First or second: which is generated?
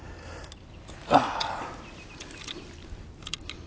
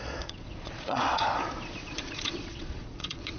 second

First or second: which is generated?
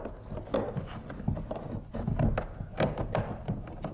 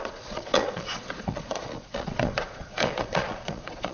second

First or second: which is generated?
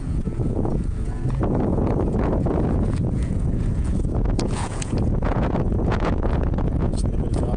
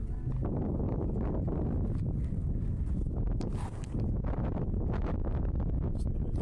first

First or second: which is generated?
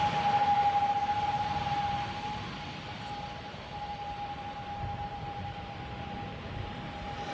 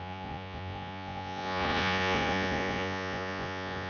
second